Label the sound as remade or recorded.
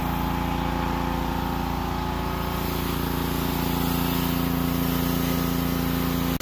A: recorded